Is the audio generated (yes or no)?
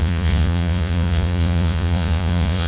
yes